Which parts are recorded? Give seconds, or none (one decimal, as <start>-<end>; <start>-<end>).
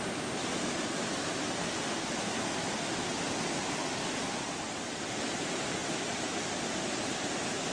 0.0-7.7